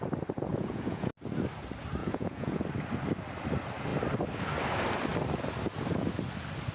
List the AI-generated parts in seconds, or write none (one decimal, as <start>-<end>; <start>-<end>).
0.5-1.1; 2.0-2.6